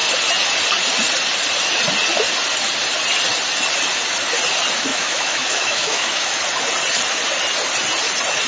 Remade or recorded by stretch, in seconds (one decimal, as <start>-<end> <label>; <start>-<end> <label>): 0.0-4.9 recorded; 4.9-6.4 remade; 6.4-8.5 recorded